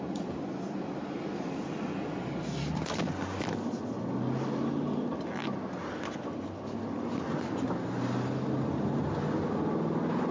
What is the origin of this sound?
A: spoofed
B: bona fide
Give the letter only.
B